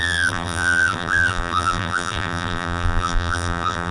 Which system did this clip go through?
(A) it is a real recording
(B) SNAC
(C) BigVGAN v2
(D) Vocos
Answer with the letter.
C